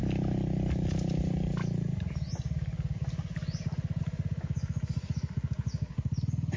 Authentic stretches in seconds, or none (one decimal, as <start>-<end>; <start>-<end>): 0.0-6.6